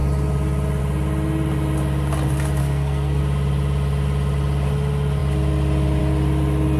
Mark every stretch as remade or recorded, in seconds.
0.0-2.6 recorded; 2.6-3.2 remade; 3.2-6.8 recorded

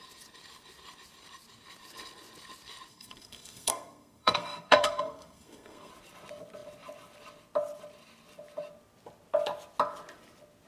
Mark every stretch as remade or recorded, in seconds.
0.0-2.9 recorded; 2.9-5.9 remade; 5.9-10.7 recorded

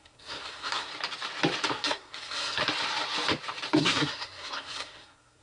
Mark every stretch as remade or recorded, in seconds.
0.0-0.9 remade; 0.9-1.7 recorded; 1.7-2.6 remade; 2.6-3.8 recorded; 3.8-5.4 remade